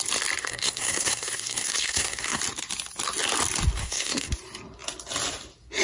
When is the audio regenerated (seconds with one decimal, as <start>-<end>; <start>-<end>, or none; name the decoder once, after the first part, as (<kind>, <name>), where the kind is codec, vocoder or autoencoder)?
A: 0.4-2.4 (codec, SNAC); 3.8-4.3